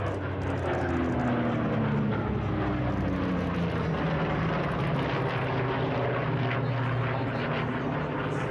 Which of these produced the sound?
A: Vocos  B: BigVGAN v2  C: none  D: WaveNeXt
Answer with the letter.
C